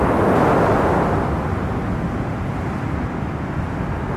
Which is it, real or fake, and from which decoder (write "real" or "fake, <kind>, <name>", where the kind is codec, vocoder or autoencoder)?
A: real